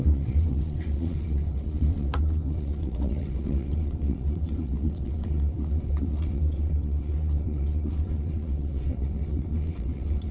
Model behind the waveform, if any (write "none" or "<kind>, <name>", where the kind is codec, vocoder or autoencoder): vocoder, WaveNeXt